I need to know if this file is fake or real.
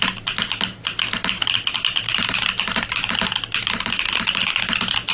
real